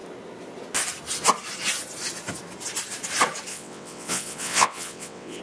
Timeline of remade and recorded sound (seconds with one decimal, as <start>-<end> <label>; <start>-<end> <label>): 0.0-3.5 recorded; 3.5-5.4 remade